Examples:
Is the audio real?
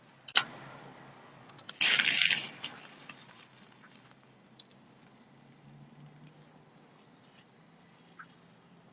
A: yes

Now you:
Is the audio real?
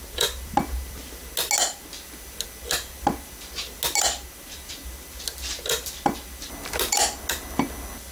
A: yes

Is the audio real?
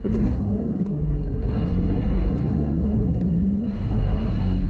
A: no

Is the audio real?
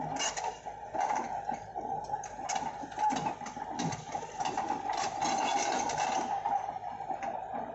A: yes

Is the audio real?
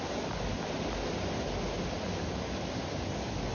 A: yes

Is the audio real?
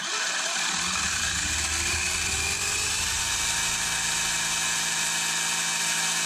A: yes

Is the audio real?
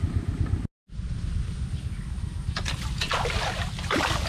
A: yes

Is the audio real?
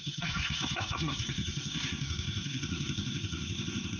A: no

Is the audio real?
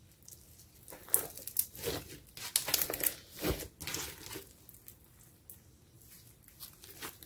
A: yes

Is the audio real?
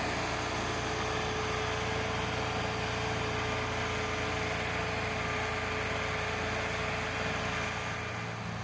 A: yes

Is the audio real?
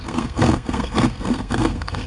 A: no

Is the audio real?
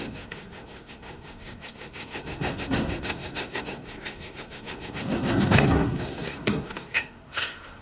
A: no